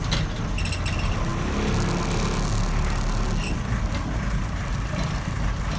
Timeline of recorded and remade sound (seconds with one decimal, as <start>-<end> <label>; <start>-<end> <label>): 0.0-5.8 recorded